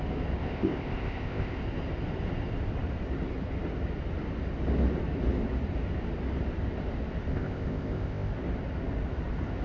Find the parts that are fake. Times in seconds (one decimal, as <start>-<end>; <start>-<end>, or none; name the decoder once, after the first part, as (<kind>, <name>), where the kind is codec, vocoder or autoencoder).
0.4-1.6 (codec, ZipCodec); 7.3-8.3